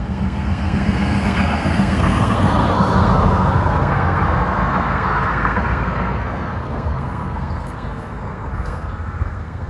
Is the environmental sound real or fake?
fake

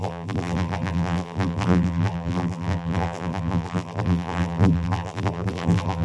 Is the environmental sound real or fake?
fake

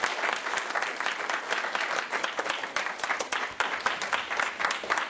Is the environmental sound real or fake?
real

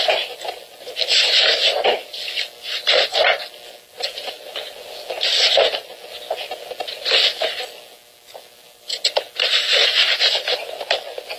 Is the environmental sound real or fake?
real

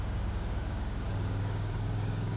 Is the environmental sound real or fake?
fake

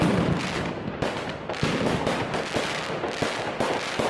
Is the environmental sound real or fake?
real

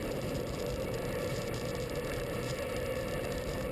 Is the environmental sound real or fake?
fake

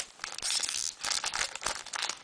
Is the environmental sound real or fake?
real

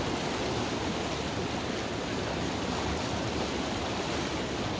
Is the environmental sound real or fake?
real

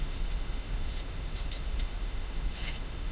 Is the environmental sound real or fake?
fake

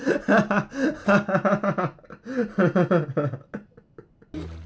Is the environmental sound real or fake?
real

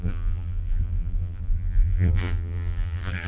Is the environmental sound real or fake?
fake